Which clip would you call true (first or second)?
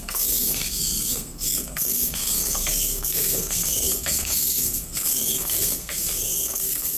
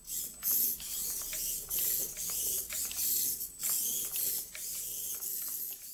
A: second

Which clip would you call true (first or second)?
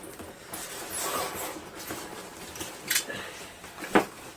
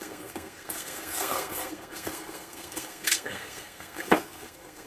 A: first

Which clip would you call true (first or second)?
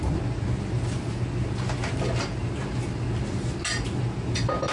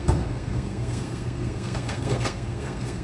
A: first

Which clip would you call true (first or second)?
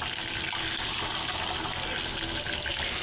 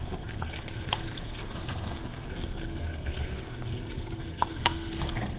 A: first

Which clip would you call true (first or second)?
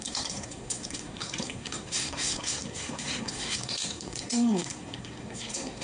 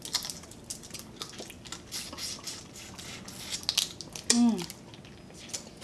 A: second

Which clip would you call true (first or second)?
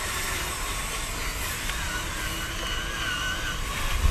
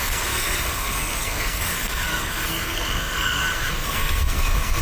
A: first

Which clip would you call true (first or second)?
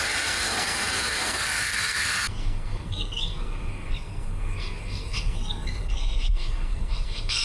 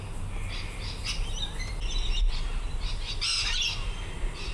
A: second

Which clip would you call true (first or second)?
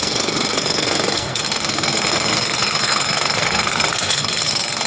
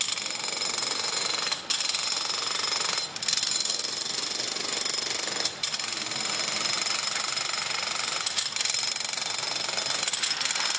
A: second